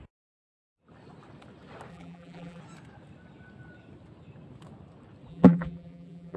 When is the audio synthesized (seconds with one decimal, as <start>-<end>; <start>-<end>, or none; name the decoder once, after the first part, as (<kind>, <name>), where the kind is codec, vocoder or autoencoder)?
1.9-2.6 (vocoder, BigVGAN v2); 5.3-6.4